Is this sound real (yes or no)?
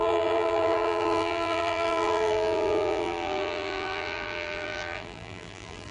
no